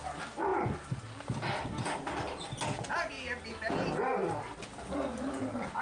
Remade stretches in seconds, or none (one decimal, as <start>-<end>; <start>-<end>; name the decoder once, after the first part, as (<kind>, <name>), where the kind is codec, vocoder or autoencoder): none